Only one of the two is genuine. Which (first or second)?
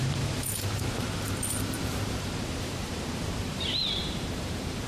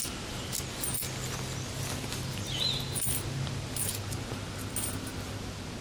second